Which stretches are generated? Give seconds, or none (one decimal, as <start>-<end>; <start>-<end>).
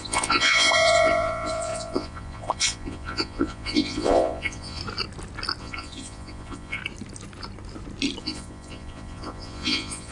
0.0-4.8; 5.6-6.8; 8.2-10.1